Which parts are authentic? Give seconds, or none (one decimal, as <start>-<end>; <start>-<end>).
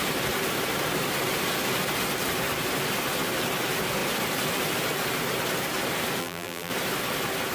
0.0-6.2; 6.7-7.5